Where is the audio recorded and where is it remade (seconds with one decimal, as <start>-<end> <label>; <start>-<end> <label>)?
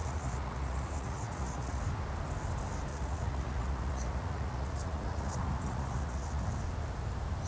0.0-1.8 remade; 1.8-2.9 recorded; 2.9-6.4 remade; 6.4-7.5 recorded